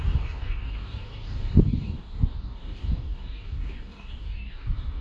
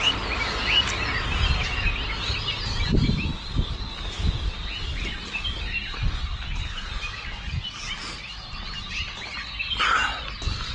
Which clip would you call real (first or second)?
second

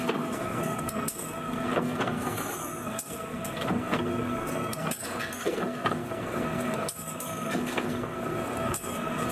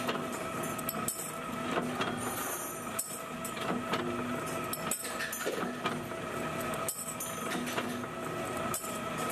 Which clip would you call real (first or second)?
second